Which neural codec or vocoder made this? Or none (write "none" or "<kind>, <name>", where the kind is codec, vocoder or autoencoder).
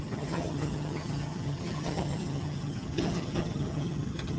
vocoder, HiFi-GAN